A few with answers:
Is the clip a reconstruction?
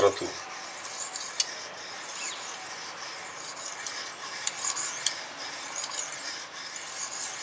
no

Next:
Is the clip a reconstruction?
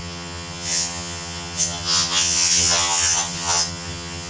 yes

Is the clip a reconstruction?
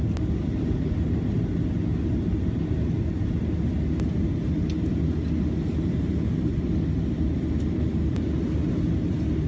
no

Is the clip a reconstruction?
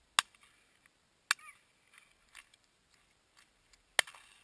no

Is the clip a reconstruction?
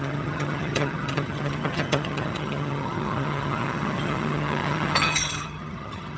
yes